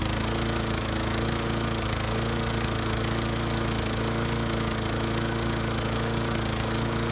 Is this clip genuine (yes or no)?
no